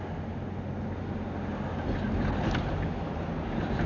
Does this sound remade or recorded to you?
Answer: recorded